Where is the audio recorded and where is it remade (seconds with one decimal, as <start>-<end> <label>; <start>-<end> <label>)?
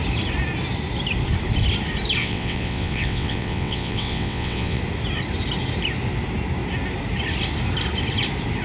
0.0-2.2 recorded; 2.2-4.8 remade; 4.8-8.6 recorded